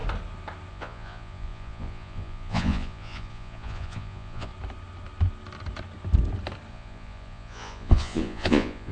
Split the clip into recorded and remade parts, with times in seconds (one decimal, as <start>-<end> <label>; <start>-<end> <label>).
0.0-0.7 recorded; 0.7-4.5 remade; 4.5-6.7 recorded; 6.7-8.9 remade